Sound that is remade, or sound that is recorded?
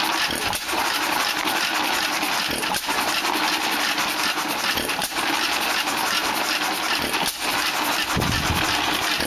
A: recorded